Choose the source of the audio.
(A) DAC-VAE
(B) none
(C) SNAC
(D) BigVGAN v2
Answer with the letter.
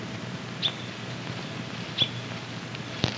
B